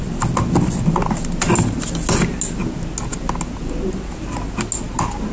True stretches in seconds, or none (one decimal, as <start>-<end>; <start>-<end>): 0.0-5.3